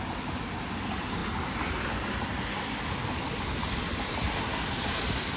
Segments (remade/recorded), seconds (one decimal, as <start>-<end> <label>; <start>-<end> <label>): 0.0-5.4 recorded